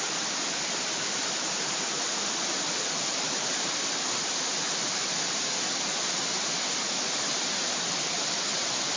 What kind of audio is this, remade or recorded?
recorded